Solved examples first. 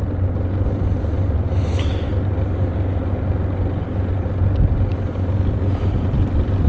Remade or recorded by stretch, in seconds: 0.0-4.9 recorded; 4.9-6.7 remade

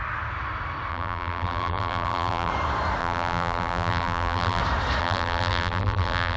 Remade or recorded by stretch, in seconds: 0.0-0.9 recorded; 0.9-2.5 remade; 2.5-3.0 recorded; 3.0-4.6 remade; 4.6-5.0 recorded; 5.0-6.4 remade

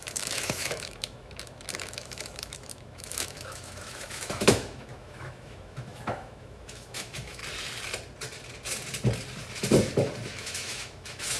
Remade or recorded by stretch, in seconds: 0.0-7.4 remade; 7.4-10.3 recorded; 10.3-11.4 remade

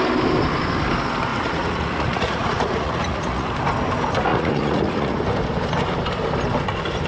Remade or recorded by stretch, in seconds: 0.0-1.3 recorded; 1.3-3.5 remade; 3.5-4.3 recorded; 4.3-5.2 remade; 5.2-7.1 recorded

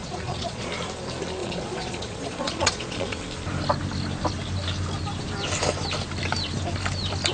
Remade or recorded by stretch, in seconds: 0.0-0.7 remade; 0.7-1.4 recorded; 1.4-3.2 remade; 3.2-7.3 recorded